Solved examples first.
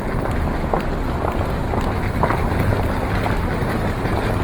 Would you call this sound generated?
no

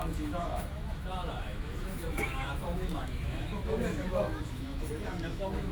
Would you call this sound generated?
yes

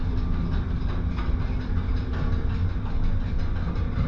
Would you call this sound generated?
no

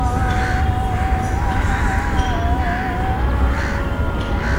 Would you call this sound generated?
no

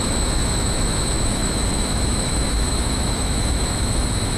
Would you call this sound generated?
yes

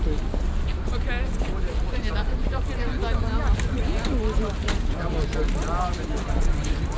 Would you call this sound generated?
no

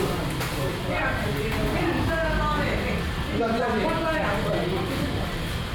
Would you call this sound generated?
no